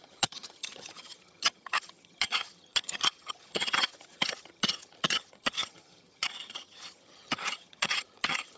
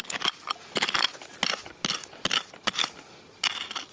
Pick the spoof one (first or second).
first